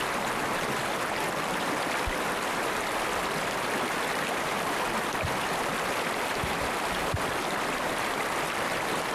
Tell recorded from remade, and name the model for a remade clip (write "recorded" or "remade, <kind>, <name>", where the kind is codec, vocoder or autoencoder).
recorded